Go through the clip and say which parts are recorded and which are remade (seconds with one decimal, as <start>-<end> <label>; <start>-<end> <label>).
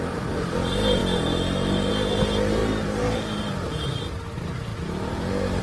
0.0-5.6 recorded